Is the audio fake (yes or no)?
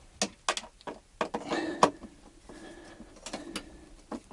no